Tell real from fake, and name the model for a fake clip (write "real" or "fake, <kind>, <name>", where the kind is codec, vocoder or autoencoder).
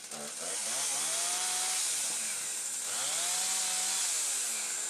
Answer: real